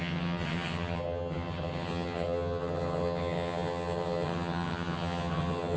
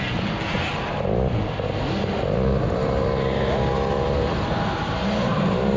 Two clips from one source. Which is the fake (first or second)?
first